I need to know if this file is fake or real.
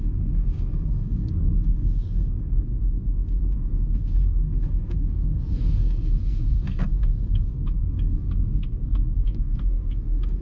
fake